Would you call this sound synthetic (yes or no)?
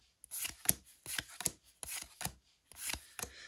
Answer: no